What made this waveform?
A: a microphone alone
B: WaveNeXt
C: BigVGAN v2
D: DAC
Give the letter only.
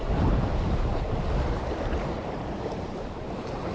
C